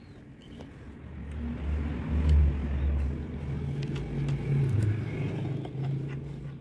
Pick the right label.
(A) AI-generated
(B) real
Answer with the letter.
B